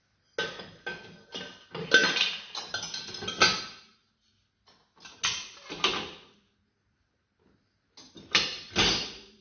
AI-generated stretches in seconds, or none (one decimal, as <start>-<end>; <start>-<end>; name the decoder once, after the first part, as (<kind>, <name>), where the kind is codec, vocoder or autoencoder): 8.5-9.4 (vocoder, BigVGAN v2)